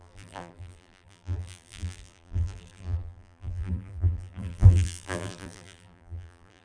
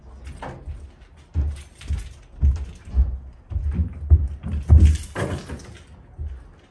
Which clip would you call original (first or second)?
second